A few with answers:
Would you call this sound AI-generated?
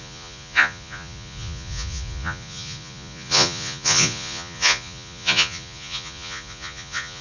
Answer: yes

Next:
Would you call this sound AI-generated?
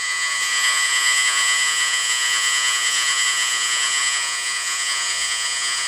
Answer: yes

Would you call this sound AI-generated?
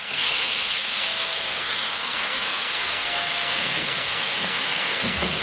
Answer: yes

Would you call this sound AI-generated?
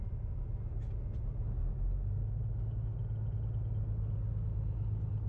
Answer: no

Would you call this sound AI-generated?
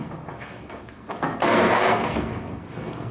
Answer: yes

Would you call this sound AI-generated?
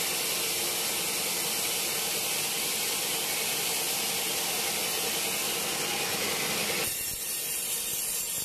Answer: no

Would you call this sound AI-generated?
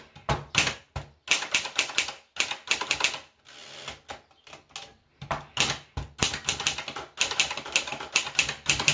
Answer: no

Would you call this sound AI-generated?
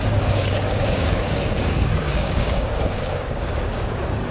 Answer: yes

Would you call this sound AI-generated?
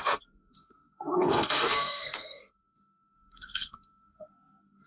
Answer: yes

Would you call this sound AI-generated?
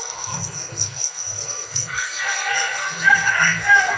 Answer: yes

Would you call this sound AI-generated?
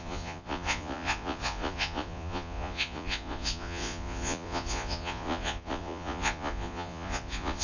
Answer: yes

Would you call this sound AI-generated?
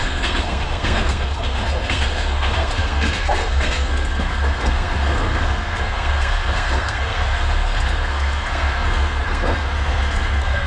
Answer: yes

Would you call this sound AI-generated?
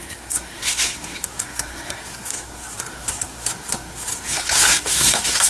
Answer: yes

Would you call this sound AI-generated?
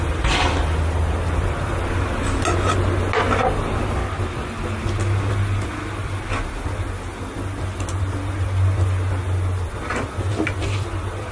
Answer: no